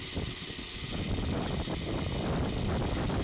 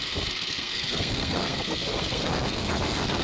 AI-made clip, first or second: second